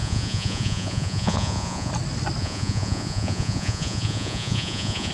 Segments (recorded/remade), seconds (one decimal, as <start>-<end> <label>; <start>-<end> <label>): 0.0-1.9 remade; 1.9-2.4 recorded; 2.4-5.1 remade